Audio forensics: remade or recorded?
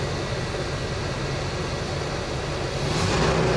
recorded